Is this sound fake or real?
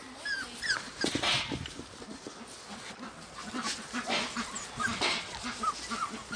real